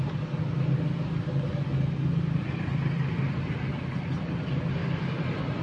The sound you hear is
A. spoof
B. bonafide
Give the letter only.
B